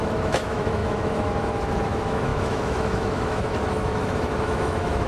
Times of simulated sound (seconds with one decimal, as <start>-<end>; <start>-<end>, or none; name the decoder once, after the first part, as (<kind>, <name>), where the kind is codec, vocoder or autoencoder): 0.0-5.1 (autoencoder, DAC-VAE)